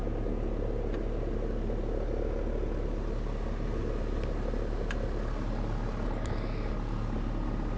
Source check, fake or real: real